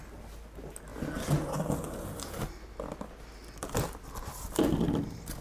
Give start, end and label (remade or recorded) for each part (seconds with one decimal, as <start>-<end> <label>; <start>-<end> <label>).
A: 0.0-5.4 recorded